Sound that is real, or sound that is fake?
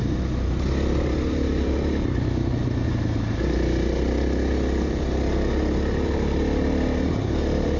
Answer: real